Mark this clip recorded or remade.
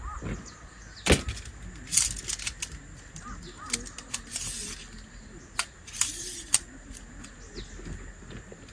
recorded